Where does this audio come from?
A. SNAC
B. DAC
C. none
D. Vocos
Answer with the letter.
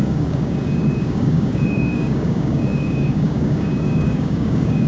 B